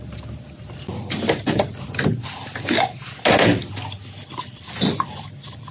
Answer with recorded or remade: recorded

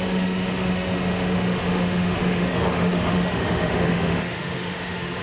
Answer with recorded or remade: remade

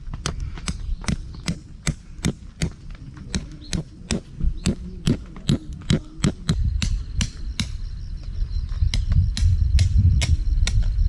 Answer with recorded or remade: recorded